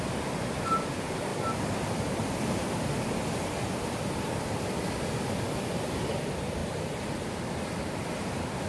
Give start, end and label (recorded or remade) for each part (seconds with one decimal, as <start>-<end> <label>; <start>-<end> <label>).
0.0-8.7 recorded